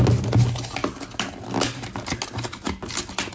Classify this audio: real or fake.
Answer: real